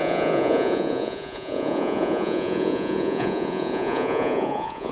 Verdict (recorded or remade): remade